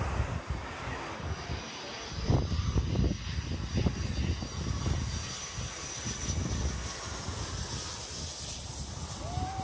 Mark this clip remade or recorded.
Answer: recorded